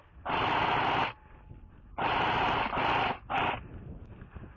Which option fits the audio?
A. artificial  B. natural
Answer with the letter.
B